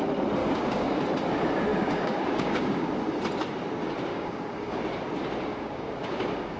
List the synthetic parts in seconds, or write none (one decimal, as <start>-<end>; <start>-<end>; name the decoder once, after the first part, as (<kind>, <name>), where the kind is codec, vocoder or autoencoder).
0.4-1.0 (codec, DAC); 1.7-2.9; 4.1-4.8; 5.5-6.6